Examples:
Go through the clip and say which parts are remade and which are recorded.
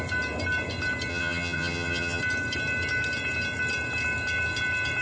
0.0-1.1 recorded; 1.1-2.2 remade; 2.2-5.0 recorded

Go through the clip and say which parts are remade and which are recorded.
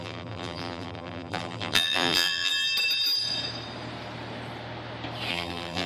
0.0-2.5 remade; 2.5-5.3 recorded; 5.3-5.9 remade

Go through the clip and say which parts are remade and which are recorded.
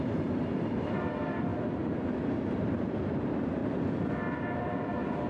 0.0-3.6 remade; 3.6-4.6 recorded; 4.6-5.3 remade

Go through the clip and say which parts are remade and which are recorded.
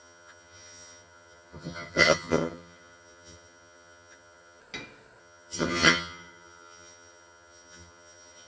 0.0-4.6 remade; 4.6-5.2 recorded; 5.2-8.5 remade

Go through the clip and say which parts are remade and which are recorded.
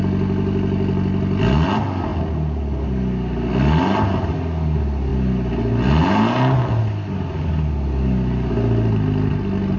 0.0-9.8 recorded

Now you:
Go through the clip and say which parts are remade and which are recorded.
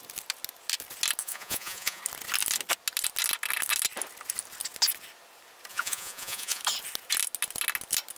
0.0-1.2 recorded; 1.2-2.0 remade; 2.0-5.7 recorded; 5.7-6.6 remade; 6.6-8.2 recorded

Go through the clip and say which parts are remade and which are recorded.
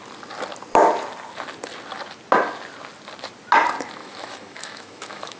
0.0-4.0 recorded; 4.0-5.4 remade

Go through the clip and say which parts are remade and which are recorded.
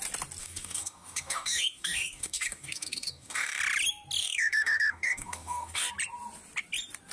0.0-0.4 recorded; 0.4-3.6 remade; 3.6-4.2 recorded; 4.2-5.9 remade; 5.9-7.1 recorded